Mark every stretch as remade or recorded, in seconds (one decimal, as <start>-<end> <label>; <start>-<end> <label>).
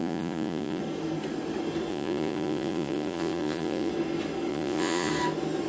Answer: 0.0-0.8 remade; 0.8-1.9 recorded; 1.9-3.9 remade; 3.9-4.5 recorded; 4.5-5.1 remade; 5.1-5.7 recorded